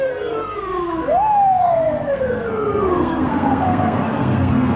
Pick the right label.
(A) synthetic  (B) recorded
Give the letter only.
A